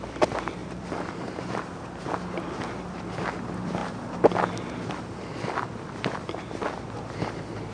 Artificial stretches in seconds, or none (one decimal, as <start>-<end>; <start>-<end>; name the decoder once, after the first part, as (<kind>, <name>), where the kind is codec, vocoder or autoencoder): 0.0-3.8 (vocoder, BigVGAN v2); 4.9-7.7